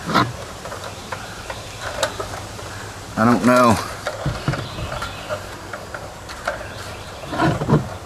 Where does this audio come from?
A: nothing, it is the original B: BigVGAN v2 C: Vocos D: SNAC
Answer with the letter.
B